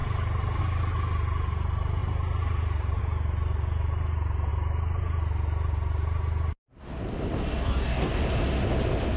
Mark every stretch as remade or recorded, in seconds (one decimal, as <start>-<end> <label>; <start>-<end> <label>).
0.0-7.6 recorded; 7.6-8.2 remade; 8.2-9.2 recorded